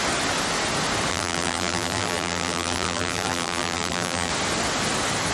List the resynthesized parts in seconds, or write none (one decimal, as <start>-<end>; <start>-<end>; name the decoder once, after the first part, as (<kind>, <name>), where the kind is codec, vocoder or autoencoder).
1.1-4.3 (vocoder, BigVGAN v2)